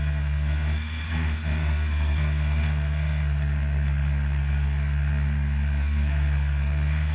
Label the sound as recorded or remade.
remade